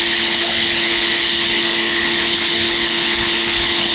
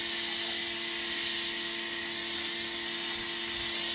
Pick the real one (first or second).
second